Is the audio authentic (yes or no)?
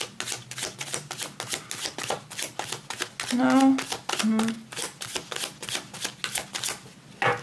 yes